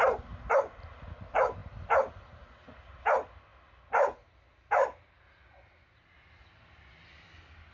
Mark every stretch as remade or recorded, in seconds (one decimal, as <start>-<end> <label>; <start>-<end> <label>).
0.0-7.7 recorded